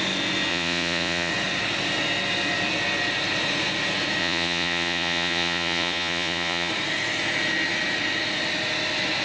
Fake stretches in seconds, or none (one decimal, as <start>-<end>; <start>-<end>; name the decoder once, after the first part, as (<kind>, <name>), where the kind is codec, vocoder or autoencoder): 0.5-1.3 (vocoder, Vocos); 4.2-6.7